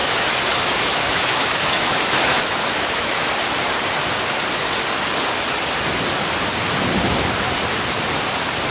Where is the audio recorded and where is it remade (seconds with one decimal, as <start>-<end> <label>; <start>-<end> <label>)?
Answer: 0.0-3.3 remade; 3.3-8.7 recorded